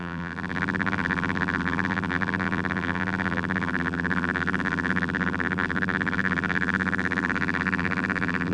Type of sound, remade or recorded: remade